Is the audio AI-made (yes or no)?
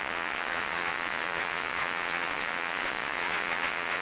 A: yes